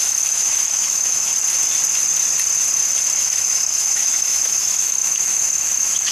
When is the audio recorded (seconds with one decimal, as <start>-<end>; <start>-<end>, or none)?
1.3-3.2

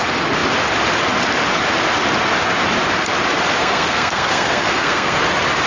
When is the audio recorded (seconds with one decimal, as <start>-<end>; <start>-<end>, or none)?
0.0-3.6; 5.2-5.7